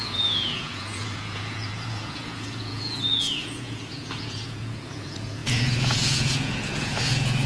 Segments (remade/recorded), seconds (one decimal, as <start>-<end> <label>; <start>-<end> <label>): 0.0-7.5 remade